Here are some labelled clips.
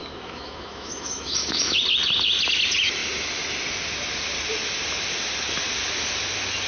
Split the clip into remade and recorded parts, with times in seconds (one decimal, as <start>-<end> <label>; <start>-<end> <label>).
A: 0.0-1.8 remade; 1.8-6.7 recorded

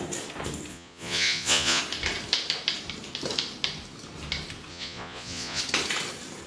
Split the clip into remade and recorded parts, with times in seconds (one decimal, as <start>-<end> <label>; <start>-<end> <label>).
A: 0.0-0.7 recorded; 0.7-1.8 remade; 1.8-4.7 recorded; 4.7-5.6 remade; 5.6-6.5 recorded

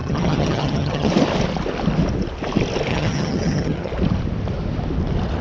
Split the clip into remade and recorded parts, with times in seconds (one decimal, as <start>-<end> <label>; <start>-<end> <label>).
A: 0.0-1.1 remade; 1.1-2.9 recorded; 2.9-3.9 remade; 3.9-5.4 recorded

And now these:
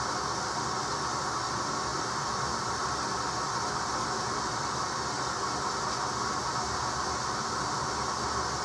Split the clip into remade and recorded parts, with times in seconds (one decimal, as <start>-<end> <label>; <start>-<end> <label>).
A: 0.0-8.6 recorded

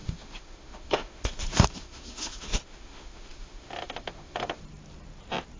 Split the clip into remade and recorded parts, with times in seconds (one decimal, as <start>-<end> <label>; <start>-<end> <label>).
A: 0.0-4.6 remade; 4.6-5.6 recorded

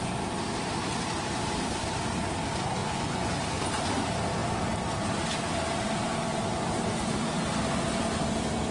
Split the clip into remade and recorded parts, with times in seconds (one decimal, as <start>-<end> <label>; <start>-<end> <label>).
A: 0.0-2.8 recorded; 2.8-3.3 remade; 3.3-8.7 recorded